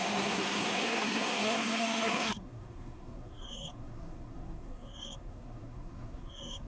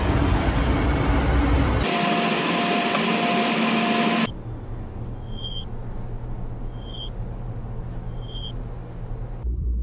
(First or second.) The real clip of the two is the second